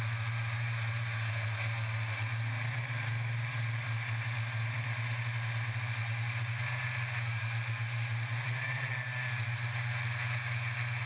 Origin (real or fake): real